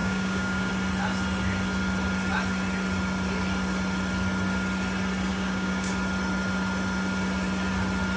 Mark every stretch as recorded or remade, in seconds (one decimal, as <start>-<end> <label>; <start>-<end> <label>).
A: 0.0-0.7 remade; 0.7-5.3 recorded; 5.3-5.9 remade; 5.9-8.2 recorded